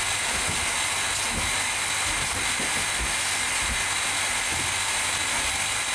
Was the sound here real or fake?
real